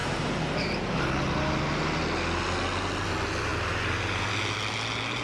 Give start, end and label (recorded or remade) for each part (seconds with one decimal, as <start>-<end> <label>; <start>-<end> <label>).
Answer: 0.0-5.2 recorded